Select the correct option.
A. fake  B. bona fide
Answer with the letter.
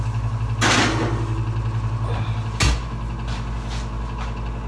B